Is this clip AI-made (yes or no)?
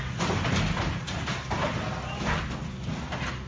no